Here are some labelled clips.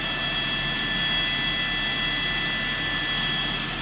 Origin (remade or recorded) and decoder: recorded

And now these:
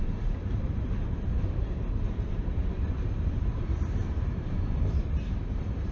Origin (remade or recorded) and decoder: remade, vocoder, BigVGAN v2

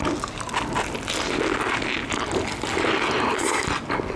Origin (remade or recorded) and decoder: recorded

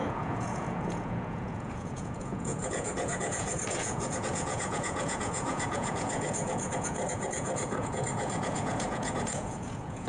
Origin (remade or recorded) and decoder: remade, vocoder, Vocos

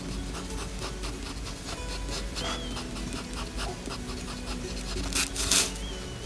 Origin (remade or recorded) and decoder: recorded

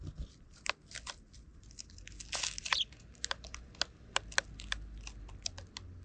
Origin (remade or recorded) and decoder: recorded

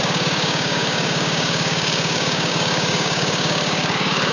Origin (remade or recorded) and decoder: remade, codec, DAC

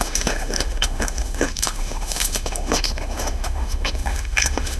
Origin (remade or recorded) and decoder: remade, autoencoder, DAC-VAE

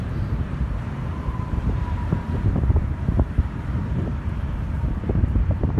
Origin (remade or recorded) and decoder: remade, vocoder, BigVGAN v2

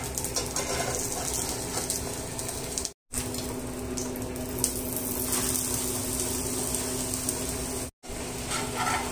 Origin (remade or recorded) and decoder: recorded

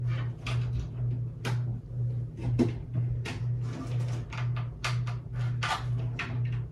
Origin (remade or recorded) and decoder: recorded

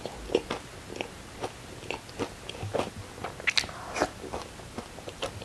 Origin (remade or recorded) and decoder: recorded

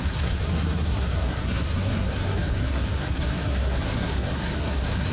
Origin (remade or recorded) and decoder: remade, codec, SNAC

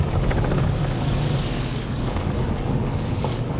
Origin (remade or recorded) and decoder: remade, codec, DAC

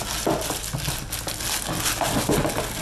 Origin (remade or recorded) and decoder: recorded